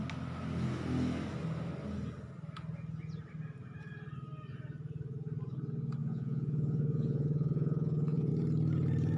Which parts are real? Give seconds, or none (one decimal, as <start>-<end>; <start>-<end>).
0.0-6.0; 8.3-9.2